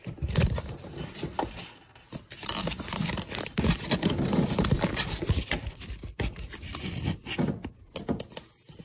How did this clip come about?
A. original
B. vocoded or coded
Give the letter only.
A